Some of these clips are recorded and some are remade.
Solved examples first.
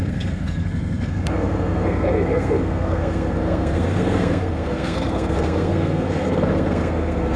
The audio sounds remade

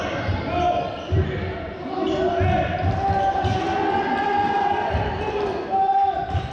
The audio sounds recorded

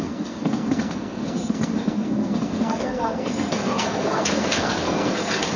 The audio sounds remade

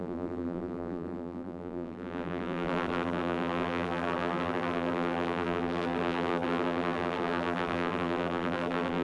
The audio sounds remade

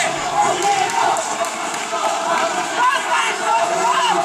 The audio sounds recorded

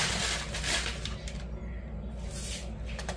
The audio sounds recorded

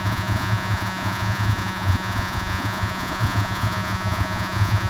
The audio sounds remade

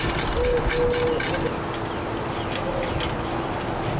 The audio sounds recorded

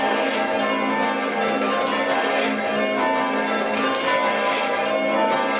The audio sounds recorded